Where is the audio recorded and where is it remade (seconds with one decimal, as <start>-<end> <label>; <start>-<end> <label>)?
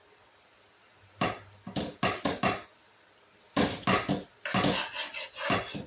0.0-5.9 recorded